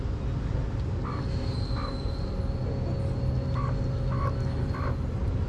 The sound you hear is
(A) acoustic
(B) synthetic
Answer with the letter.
A